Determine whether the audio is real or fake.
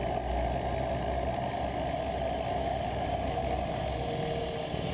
real